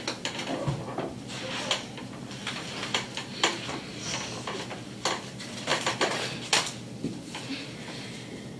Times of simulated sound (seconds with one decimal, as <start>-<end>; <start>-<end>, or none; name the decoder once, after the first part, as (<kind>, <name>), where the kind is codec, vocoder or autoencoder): none